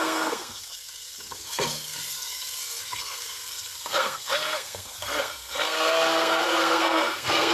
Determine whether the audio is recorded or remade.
remade